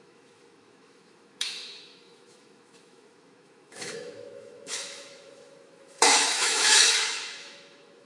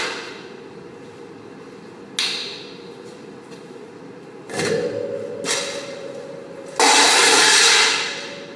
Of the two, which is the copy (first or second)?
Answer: first